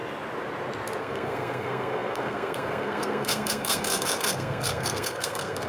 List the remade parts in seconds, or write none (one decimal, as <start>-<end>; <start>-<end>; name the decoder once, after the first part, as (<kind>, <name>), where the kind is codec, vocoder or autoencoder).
1.0-5.7 (codec, SNAC)